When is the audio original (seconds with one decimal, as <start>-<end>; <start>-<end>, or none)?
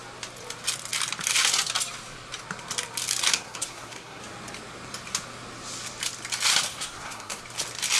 0.0-3.3; 4.2-6.7; 7.4-8.0